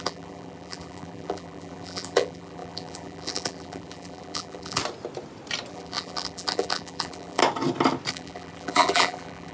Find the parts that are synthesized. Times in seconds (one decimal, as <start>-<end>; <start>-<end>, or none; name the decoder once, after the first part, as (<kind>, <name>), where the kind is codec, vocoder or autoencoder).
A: 0.0-4.8 (vocoder, BigVGAN v2); 5.7-7.4; 8.1-9.5